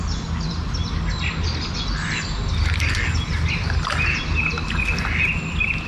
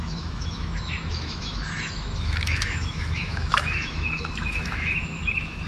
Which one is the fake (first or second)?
second